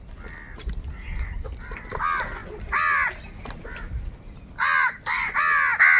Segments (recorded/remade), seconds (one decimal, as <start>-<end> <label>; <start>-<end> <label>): 0.0-6.0 recorded